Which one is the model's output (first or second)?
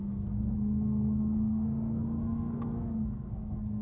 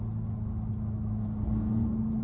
first